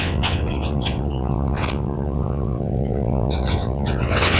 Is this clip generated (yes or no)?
yes